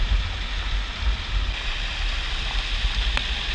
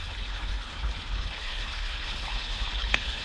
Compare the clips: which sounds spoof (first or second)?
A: second